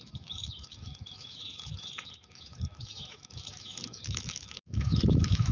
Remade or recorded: remade